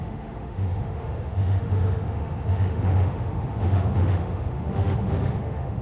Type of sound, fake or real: fake